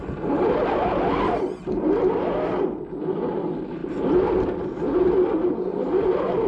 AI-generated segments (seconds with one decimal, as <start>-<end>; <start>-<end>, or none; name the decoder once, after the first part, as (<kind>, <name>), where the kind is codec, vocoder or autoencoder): none